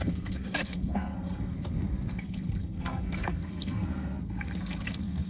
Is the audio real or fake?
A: fake